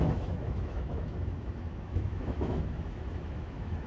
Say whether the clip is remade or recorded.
remade